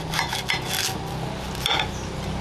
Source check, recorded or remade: recorded